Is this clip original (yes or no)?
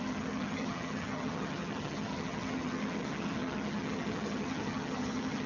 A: no